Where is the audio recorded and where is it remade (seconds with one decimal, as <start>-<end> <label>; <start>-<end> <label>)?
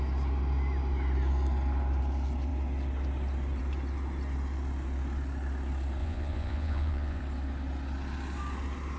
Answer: 0.0-6.0 recorded; 6.0-7.2 remade; 7.2-9.0 recorded